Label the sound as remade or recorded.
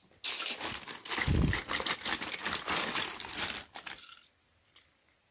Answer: recorded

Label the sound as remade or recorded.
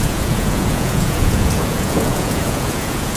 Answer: remade